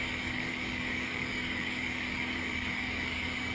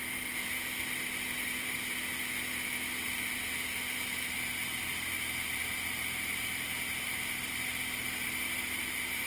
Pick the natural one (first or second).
second